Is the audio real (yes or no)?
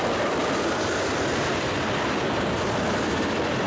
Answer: yes